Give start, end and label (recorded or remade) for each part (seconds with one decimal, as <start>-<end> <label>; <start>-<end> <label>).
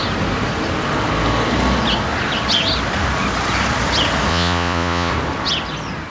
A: 0.0-4.3 recorded; 4.3-5.1 remade; 5.1-6.1 recorded